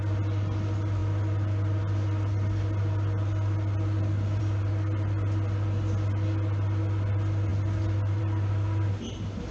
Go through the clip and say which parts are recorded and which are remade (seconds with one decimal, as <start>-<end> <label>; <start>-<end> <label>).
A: 0.0-9.5 recorded